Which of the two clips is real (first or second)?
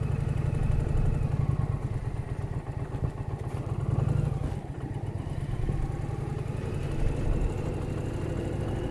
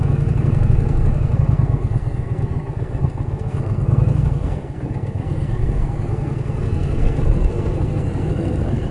first